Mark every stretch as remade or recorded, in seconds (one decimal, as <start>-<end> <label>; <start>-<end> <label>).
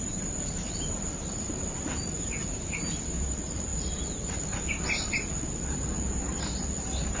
0.0-7.2 remade